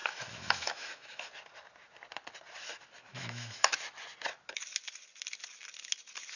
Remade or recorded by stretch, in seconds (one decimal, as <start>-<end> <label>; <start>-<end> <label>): 0.0-1.3 remade; 1.3-3.1 recorded; 3.1-3.7 remade; 3.7-6.4 recorded